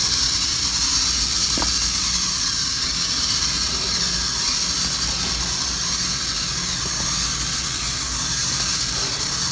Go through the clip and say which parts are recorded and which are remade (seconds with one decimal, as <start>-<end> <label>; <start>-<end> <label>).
0.0-9.5 recorded